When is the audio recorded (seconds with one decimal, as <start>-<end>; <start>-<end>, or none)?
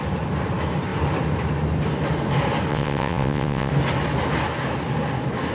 0.0-2.7; 3.7-5.5